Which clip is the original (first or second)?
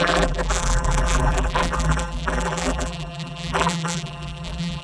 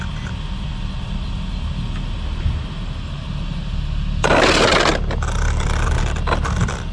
second